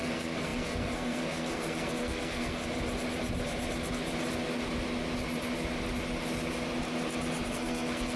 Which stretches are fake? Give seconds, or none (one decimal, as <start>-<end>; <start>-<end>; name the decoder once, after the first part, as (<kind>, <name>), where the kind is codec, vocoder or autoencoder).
0.0-2.6 (codec, SNAC); 7.5-8.2